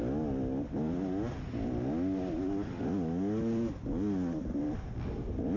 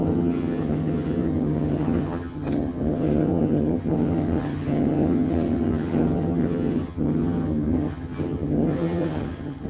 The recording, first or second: first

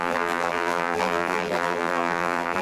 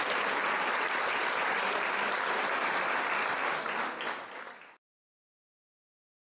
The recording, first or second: second